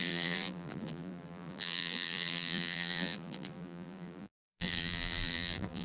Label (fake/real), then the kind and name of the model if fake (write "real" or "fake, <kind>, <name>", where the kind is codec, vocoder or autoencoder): fake, vocoder, BigVGAN v2